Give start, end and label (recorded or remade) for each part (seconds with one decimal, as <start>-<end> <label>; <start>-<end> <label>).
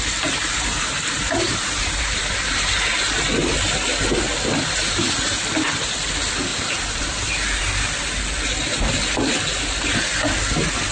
0.0-0.4 recorded; 0.4-2.7 remade; 2.7-6.5 recorded; 6.5-7.3 remade; 7.3-10.9 recorded